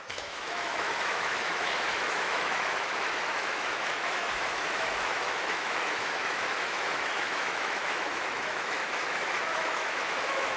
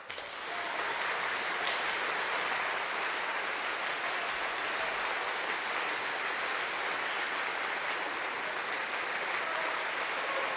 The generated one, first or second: first